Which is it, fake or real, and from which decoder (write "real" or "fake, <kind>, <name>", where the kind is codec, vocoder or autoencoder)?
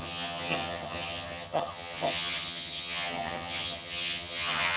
fake, vocoder, HiFi-GAN